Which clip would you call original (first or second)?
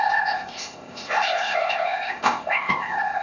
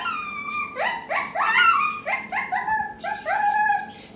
second